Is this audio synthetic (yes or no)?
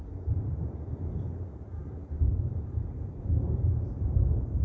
yes